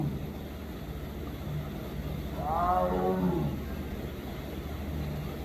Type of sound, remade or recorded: recorded